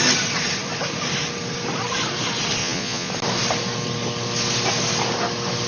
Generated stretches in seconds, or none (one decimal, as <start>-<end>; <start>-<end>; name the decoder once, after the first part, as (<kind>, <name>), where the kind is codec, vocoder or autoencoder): 2.6-3.1 (vocoder, Vocos)